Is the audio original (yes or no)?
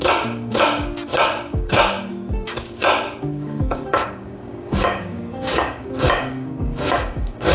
no